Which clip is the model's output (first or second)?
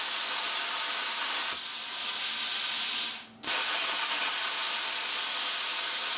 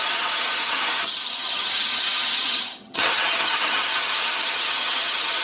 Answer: second